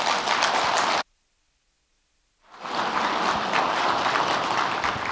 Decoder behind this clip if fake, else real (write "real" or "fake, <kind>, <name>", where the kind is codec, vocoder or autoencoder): real